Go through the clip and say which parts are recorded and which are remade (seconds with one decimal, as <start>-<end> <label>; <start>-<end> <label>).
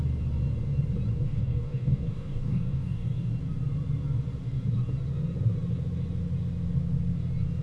0.0-1.1 recorded; 1.1-3.3 remade; 3.3-7.6 recorded